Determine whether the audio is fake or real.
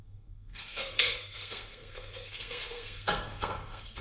fake